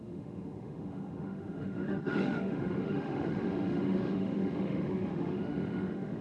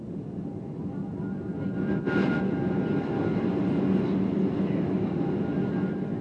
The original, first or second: second